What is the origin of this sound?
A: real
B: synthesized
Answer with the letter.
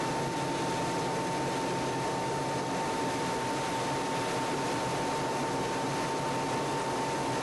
A